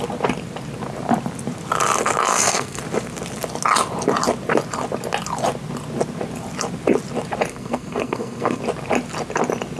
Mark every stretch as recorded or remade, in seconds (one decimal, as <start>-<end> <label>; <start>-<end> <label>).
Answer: 0.0-2.3 recorded; 2.3-2.8 remade; 2.8-7.5 recorded; 7.5-8.6 remade; 8.6-9.8 recorded